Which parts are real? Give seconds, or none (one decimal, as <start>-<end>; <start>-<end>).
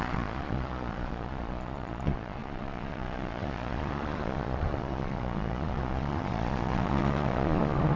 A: none